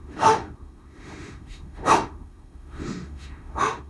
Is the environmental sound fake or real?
fake